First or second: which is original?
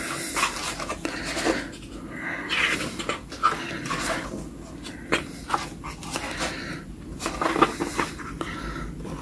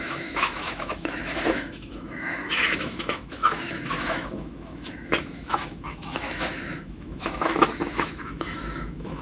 first